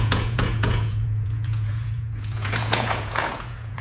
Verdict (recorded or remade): remade